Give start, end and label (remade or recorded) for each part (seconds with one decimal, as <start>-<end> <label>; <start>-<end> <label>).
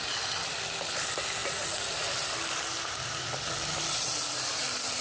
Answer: 0.0-5.0 recorded